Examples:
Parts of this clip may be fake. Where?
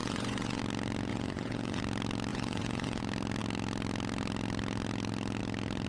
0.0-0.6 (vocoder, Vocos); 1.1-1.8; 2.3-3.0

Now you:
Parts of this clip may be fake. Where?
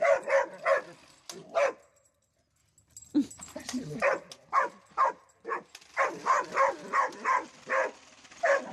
none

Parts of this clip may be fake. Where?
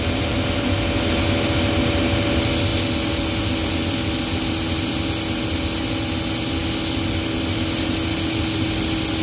none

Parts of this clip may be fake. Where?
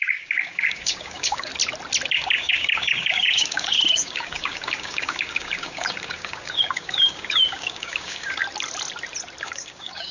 0.0-1.5 (codec, DAC); 2.1-8.4; 9.4-10.1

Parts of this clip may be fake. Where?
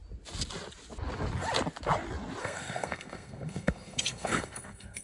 2.4-5.0 (codec, SNAC)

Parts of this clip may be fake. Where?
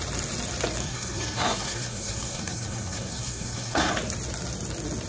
0.8-3.9 (codec, SNAC)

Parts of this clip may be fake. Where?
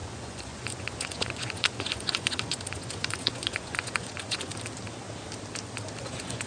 0.0-4.5 (vocoder, Vocos); 6.0-6.5